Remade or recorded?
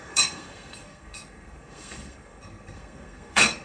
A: remade